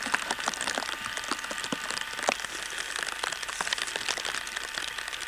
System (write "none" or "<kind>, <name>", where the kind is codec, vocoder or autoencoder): none